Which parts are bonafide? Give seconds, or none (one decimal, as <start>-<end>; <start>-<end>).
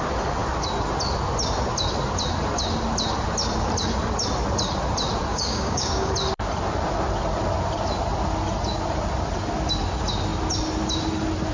0.0-5.3; 6.1-11.5